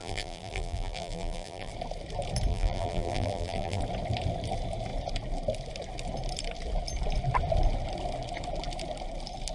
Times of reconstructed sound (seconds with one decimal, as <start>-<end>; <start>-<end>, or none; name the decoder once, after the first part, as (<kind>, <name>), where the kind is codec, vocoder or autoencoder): 0.0-1.7 (vocoder, BigVGAN v2); 2.5-3.8